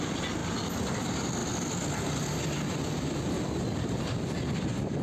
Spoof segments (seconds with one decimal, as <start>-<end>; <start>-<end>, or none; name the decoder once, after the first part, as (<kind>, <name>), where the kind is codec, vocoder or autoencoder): none